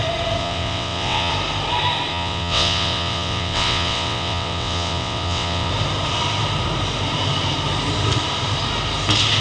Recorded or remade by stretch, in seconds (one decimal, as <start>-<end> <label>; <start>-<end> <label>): 0.0-0.4 recorded; 0.4-1.3 remade; 1.3-2.1 recorded; 2.1-5.7 remade; 5.7-9.4 recorded